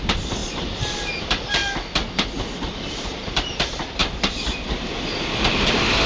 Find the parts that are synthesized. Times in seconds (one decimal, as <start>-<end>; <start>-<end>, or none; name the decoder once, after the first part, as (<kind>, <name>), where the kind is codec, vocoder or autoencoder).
0.0-0.4 (vocoder, BigVGAN v2); 1.2-1.6; 2.9-4.0; 5.5-6.1